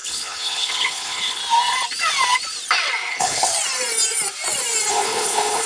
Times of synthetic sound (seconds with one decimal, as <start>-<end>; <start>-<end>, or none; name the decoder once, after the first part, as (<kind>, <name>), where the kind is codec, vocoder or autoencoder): 0.0-1.4 (codec, HILCodec); 3.1-3.5; 4.9-5.7